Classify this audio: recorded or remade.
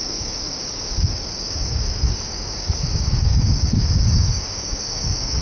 remade